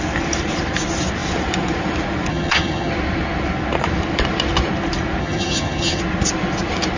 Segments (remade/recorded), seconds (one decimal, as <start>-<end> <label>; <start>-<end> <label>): 0.0-2.3 recorded; 2.3-2.9 remade; 2.9-5.2 recorded; 5.2-6.0 remade; 6.0-7.0 recorded